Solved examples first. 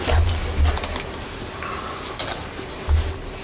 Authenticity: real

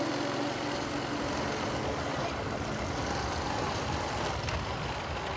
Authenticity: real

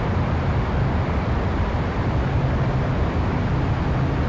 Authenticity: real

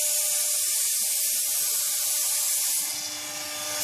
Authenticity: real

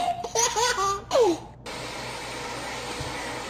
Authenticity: real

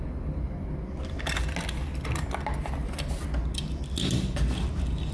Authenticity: real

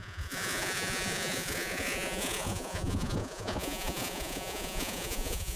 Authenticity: fake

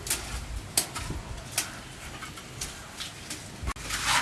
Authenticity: real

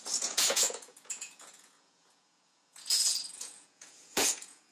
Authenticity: fake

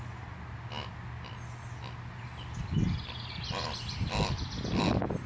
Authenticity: real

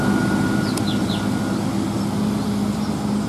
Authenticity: real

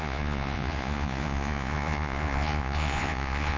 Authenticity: fake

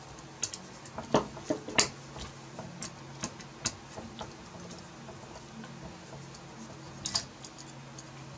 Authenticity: real